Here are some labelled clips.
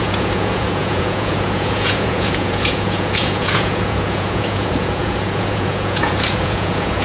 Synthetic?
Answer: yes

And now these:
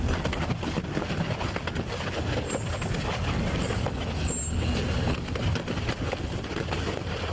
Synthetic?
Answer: no